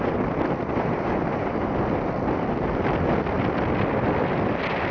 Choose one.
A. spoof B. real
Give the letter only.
B